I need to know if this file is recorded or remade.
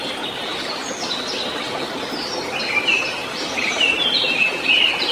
recorded